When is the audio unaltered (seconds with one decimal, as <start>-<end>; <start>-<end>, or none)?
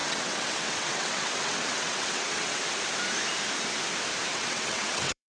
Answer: 2.6-4.3